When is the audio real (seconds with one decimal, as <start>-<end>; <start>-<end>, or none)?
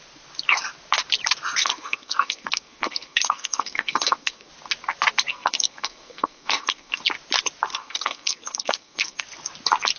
0.0-1.6; 4.5-5.3; 7.0-7.7; 9.2-10.0